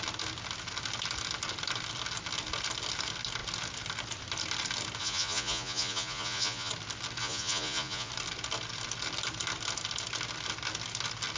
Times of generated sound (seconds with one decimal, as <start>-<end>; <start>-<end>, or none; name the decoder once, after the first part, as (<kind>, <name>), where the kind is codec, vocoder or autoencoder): 5.0-6.7 (vocoder, Vocos); 7.2-8.1